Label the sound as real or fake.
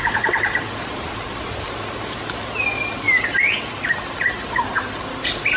real